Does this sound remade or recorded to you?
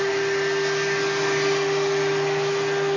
recorded